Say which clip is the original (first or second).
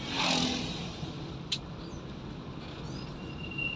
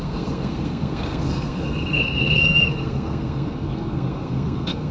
first